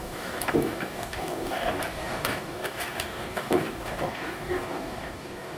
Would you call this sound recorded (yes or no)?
no